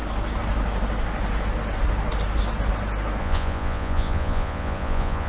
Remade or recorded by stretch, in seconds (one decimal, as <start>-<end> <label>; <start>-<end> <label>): 0.0-3.2 recorded; 3.2-5.3 remade